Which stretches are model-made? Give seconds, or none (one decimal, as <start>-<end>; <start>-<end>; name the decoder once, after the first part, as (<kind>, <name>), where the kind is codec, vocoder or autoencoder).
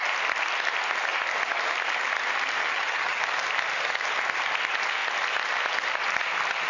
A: 2.6-3.2 (vocoder, HiFi-GAN)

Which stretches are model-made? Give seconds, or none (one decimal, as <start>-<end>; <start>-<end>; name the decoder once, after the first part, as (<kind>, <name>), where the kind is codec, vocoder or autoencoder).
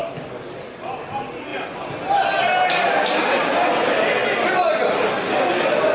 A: 0.0-0.9 (codec, DAC)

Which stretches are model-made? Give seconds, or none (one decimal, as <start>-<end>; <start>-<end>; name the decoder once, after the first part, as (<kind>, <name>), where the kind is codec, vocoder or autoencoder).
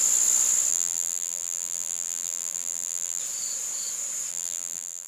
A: 0.7-3.2 (vocoder, BigVGAN v2); 4.3-5.1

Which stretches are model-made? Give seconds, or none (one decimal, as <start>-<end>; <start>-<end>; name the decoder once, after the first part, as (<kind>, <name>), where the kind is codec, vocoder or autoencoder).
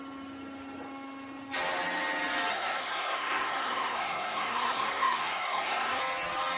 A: 2.5-6.0 (codec, SNAC)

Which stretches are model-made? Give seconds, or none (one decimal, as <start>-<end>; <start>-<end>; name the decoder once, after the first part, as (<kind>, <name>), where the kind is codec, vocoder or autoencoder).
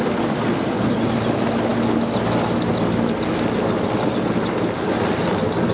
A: none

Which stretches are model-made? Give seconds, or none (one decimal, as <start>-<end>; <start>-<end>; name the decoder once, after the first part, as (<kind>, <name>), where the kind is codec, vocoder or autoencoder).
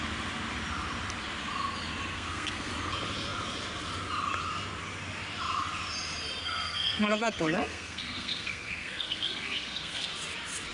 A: 2.1-2.7 (codec, SNAC); 6.4-10.1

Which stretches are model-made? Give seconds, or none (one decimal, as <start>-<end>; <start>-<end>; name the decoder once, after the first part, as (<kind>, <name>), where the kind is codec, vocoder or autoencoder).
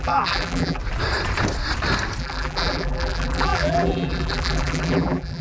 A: 0.0-0.8 (vocoder, BigVGAN v2); 2.2-5.4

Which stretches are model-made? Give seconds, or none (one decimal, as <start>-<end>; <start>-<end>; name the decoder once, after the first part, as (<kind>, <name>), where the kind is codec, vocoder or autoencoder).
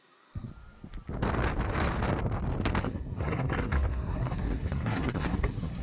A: 0.0-0.5 (codec, SNAC); 2.8-5.8